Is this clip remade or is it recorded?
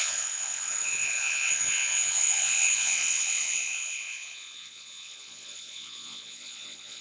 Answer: remade